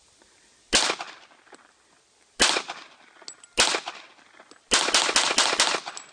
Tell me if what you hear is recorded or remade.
recorded